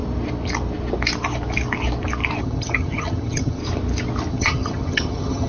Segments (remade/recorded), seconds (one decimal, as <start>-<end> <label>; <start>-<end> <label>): 0.0-2.4 recorded; 2.4-3.6 remade; 3.6-4.3 recorded; 4.3-5.5 remade